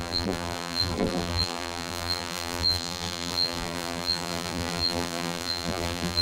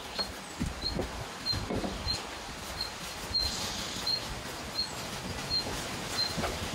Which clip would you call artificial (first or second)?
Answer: first